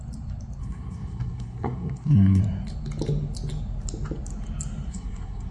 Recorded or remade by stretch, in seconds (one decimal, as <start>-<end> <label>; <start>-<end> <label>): 0.0-0.6 recorded; 0.6-2.4 remade; 2.4-4.9 recorded; 4.9-5.5 remade